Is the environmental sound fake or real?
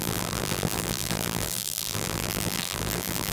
fake